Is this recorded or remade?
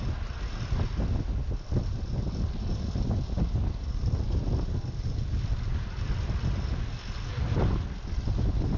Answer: recorded